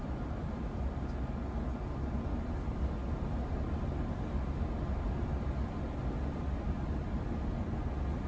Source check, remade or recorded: recorded